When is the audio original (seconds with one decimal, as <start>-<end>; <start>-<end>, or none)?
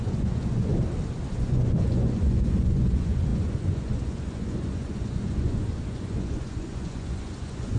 0.7-1.3